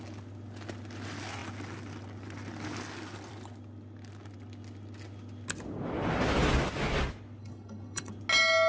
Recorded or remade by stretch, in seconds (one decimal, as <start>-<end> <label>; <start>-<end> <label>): 0.0-7.4 recorded; 7.4-8.1 remade; 8.1-8.7 recorded